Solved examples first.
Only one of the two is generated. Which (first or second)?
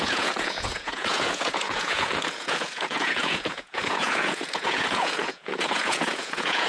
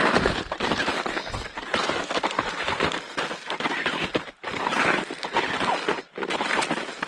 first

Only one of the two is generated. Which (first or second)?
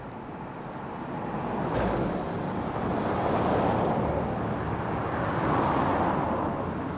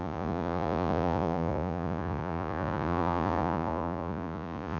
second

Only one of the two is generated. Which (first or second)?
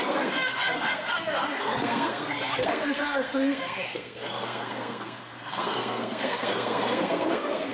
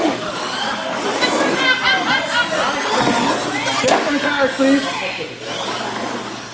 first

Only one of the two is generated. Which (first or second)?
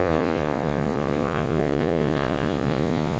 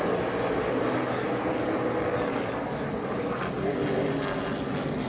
first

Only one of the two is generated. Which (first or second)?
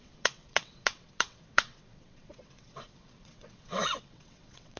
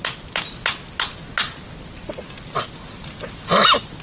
first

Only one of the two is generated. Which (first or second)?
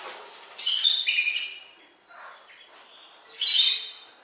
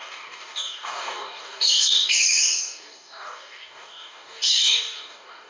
second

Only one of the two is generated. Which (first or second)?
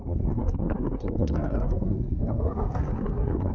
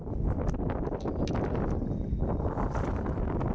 first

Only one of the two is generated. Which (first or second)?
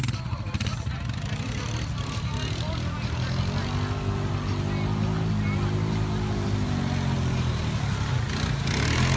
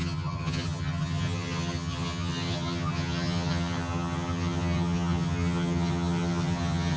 second